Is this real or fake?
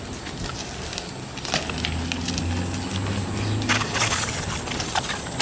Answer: real